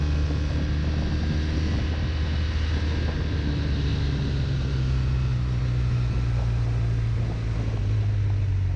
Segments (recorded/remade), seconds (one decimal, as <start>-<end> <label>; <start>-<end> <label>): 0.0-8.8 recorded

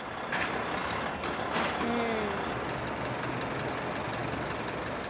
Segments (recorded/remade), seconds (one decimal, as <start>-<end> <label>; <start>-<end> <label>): 0.0-5.1 recorded

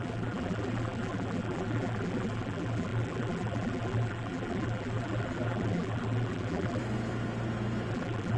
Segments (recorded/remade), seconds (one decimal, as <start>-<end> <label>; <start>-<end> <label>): 0.0-6.8 remade; 6.8-7.9 recorded; 7.9-8.4 remade

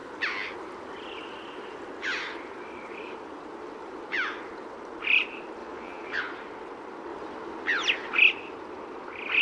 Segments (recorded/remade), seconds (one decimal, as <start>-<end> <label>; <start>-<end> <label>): 0.0-5.6 recorded; 5.6-6.2 remade; 6.2-9.4 recorded

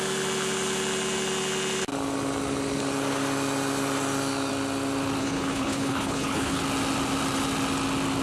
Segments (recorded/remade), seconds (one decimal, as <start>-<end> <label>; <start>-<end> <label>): 0.0-5.2 recorded; 5.2-6.6 remade; 6.6-8.2 recorded

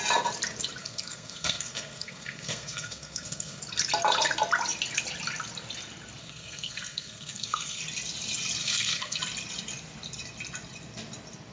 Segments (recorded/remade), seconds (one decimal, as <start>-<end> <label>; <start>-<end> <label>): 0.0-0.8 recorded; 0.8-3.6 remade; 3.6-6.2 recorded; 6.2-7.8 remade; 7.8-8.6 recorded; 8.6-9.2 remade; 9.2-11.5 recorded

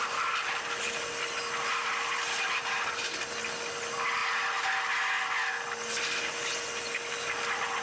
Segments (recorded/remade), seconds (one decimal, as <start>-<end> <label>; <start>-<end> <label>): 0.0-7.8 recorded

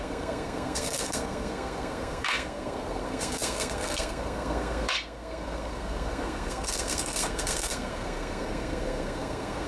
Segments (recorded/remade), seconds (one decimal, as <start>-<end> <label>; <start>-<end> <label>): 0.0-9.7 remade